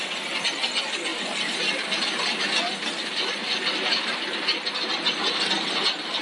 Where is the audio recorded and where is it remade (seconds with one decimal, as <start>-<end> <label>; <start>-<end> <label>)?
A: 0.0-1.1 recorded; 1.1-1.6 remade; 1.6-6.2 recorded